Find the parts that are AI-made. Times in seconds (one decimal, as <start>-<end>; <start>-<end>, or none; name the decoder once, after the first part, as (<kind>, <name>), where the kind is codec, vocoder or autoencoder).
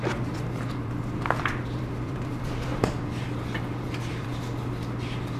0.0-4.3 (vocoder, BigVGAN v2)